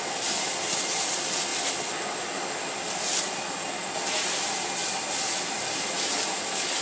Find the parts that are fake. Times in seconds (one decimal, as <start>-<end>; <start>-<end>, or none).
none